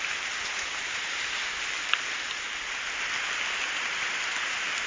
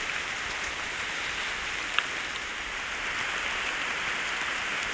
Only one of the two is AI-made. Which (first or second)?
first